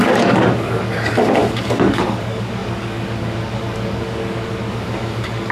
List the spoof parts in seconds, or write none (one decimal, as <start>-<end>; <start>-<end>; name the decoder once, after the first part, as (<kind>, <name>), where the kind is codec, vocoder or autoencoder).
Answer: 0.0-5.5 (codec, DAC)